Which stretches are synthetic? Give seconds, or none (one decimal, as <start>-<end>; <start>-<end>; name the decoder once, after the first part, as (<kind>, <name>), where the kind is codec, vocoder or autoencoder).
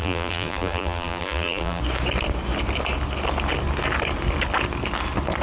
0.0-1.8 (vocoder, BigVGAN v2)